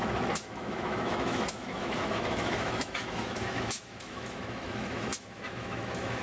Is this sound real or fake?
fake